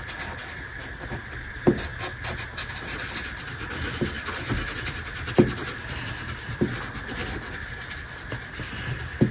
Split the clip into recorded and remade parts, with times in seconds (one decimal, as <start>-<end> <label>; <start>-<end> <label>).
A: 0.0-9.3 recorded